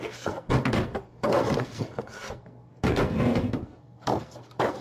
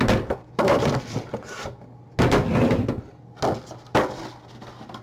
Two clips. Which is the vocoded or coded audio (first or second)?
first